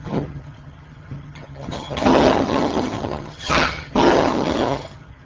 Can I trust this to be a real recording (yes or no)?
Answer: no